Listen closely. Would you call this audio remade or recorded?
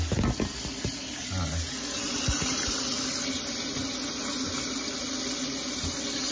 recorded